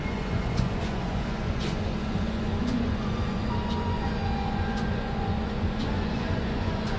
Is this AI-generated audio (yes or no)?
yes